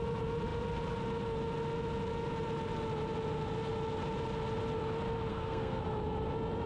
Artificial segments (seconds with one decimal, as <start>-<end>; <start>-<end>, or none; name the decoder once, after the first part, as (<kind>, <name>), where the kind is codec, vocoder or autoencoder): 5.3-5.8 (codec, SNAC)

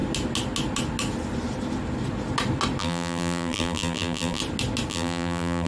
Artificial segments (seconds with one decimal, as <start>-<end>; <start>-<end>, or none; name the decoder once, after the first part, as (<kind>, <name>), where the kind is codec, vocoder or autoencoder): 2.8-4.4 (vocoder, BigVGAN v2); 4.9-5.7

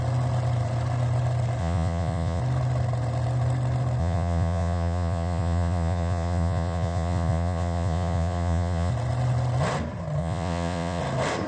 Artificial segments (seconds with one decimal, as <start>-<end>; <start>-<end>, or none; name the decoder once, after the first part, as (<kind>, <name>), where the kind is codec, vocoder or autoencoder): 1.6-2.4 (vocoder, Vocos); 4.0-8.9; 10.2-11.0

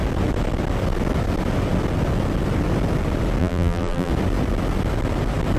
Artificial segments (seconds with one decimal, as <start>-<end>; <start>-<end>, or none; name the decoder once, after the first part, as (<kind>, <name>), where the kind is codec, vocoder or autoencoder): 3.4-4.1 (vocoder, BigVGAN v2)

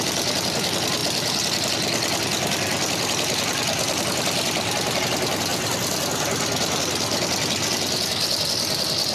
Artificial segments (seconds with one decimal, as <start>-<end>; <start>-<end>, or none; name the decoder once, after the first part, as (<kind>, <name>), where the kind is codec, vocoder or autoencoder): none

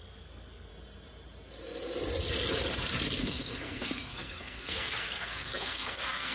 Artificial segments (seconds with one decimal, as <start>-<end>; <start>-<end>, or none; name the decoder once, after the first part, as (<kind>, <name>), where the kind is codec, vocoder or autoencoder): 0.0-0.7 (codec, SNAC); 3.2-6.3